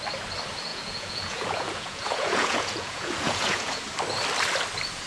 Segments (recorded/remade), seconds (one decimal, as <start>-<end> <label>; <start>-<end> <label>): 0.0-0.7 recorded; 0.7-3.8 remade; 3.8-5.1 recorded